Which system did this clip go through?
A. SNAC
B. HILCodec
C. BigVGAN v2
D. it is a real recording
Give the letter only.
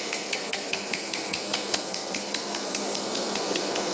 A